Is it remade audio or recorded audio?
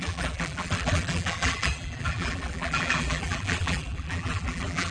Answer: remade